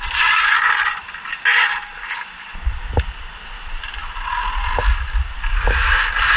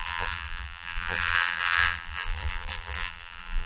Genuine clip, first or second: first